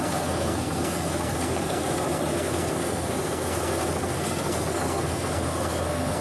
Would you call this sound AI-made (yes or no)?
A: yes